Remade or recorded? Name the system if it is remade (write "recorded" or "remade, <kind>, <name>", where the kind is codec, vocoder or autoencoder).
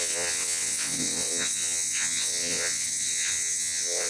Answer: remade, vocoder, WaveNeXt